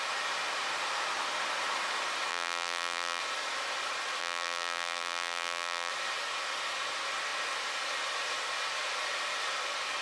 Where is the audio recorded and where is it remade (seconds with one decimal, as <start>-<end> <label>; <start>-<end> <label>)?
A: 0.0-2.3 recorded; 2.3-3.2 remade; 3.2-4.2 recorded; 4.2-5.9 remade; 5.9-10.0 recorded